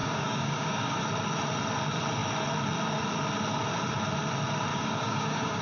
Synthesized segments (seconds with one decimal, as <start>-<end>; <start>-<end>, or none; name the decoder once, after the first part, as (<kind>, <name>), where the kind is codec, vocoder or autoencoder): 0.0-1.0 (codec, DAC); 4.7-5.6